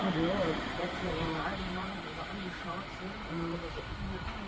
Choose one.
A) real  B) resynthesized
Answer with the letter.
B